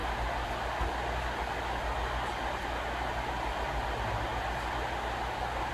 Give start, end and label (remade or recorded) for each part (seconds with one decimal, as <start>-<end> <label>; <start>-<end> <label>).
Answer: 0.0-5.7 recorded